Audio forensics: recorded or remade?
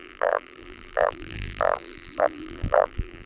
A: remade